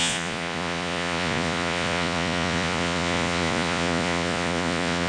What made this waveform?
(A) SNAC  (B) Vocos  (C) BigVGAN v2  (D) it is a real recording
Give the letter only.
B